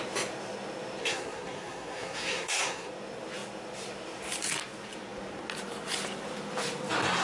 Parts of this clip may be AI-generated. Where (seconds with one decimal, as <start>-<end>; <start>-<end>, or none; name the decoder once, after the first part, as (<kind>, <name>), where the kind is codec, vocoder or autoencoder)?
1.0-2.9 (codec, SNAC)

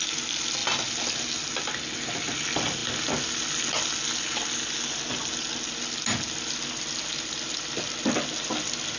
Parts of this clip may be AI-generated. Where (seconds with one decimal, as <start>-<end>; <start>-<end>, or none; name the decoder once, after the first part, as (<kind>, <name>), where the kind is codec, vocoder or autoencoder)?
none

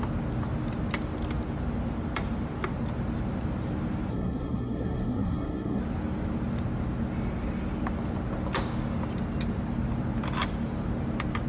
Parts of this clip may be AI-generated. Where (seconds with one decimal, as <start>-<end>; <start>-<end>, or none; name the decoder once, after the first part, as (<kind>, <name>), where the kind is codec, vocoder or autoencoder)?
4.1-5.8 (codec, SNAC)

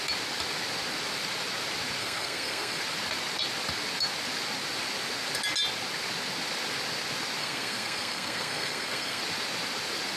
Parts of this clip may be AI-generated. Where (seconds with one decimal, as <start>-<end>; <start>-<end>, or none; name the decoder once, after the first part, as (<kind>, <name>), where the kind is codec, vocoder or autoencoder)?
2.0-2.8 (codec, SNAC); 7.4-9.2

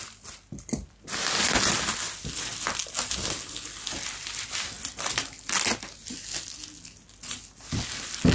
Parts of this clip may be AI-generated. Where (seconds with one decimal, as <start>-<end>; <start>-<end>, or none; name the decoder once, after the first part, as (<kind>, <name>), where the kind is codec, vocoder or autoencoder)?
none

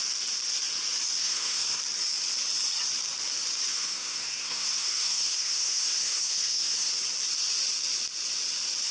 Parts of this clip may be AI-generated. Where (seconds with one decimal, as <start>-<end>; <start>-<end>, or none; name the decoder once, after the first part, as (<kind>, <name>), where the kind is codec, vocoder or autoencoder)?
1.2-1.8 (codec, SNAC); 3.7-6.9